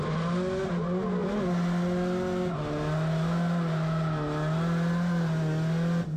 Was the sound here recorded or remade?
recorded